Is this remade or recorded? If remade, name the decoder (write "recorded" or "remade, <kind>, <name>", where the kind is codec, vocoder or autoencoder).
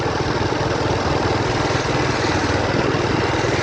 recorded